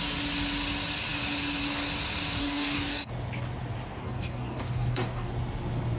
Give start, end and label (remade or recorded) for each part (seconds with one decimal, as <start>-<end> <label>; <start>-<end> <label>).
0.0-2.4 recorded; 2.4-3.1 remade; 3.1-4.0 recorded; 4.0-5.3 remade; 5.3-6.0 recorded